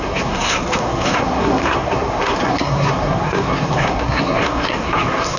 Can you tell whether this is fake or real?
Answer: fake